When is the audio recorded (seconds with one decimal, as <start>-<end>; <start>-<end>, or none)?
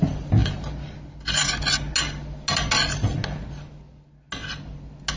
0.0-5.2